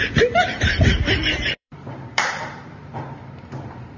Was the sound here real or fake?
fake